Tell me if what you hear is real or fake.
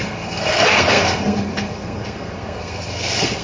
fake